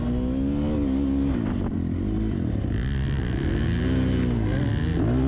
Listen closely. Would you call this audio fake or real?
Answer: real